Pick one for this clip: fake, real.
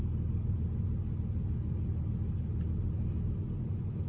real